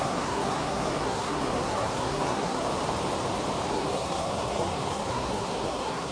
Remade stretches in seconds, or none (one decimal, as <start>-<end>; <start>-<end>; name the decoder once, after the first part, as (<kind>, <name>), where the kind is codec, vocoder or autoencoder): 0.0-2.7 (codec, SNAC); 3.7-6.1